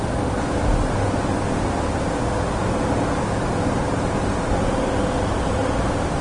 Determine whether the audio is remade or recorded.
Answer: recorded